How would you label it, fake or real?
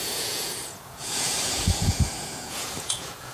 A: fake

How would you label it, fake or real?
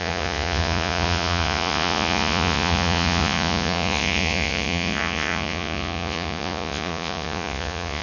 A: fake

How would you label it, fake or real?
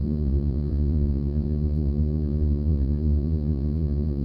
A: fake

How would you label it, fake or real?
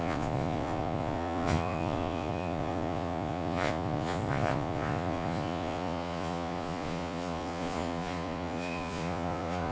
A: fake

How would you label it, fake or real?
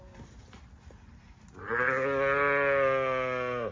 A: real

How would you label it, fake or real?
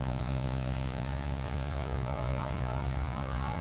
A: fake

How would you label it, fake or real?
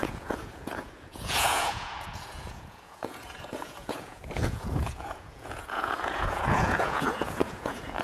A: fake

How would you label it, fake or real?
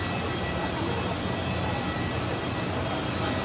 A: real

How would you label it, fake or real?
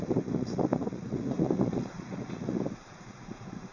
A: fake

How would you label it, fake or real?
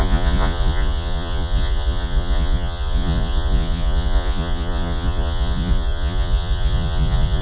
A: fake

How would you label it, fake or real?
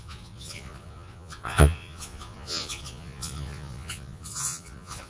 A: fake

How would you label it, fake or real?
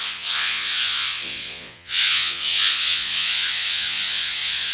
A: fake